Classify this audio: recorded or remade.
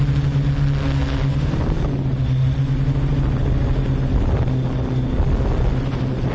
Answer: recorded